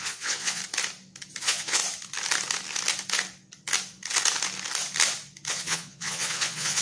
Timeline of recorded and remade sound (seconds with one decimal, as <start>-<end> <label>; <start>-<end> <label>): 0.0-0.6 remade; 0.6-1.4 recorded; 1.4-1.8 remade; 1.8-5.5 recorded; 5.5-6.8 remade